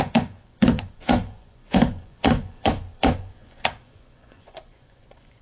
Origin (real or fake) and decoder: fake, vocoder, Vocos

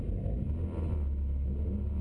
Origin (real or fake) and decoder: real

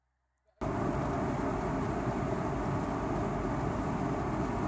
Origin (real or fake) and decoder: real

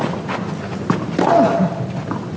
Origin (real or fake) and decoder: real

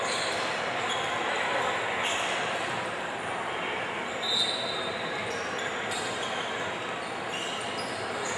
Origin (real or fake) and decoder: real